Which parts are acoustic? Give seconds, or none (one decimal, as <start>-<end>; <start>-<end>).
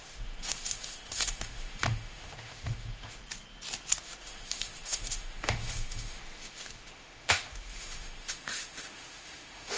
3.2-4.0